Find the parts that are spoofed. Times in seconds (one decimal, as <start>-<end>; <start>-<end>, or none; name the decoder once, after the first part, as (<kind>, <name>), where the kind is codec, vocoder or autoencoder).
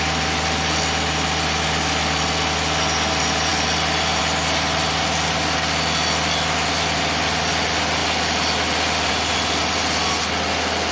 none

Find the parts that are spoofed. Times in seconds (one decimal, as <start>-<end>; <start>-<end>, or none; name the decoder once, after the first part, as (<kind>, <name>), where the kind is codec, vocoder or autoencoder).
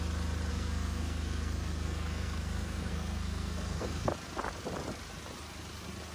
0.5-4.1 (codec, SNAC)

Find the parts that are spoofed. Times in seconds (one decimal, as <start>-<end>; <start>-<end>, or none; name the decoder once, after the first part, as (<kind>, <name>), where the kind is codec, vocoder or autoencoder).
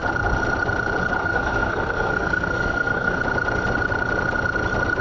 1.2-3.2 (codec, SNAC)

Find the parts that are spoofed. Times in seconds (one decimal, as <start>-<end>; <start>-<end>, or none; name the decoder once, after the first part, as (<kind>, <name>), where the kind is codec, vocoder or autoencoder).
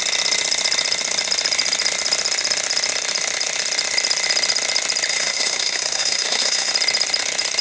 5.1-6.7 (codec, SNAC)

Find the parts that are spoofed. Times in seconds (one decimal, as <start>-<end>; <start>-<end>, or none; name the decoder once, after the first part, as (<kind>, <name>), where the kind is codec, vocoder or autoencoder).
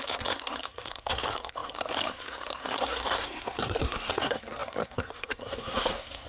0.0-6.3 (codec, SNAC)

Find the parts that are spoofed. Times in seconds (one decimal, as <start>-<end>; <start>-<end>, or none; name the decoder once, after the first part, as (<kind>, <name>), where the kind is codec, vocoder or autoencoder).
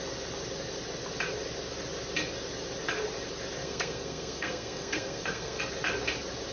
3.6-5.6 (codec, SNAC)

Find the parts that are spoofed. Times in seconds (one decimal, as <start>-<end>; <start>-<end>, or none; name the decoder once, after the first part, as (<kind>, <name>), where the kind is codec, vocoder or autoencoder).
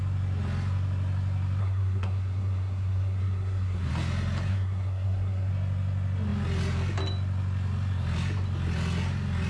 1.6-3.9 (codec, SNAC); 4.5-5.5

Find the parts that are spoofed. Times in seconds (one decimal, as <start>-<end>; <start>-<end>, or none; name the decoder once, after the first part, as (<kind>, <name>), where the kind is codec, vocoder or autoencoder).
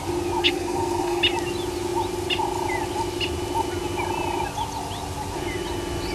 0.4-1.2 (codec, SNAC)